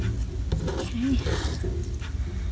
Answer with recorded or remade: recorded